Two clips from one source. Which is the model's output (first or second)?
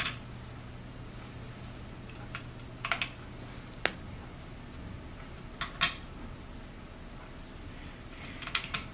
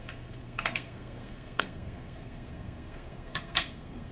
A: second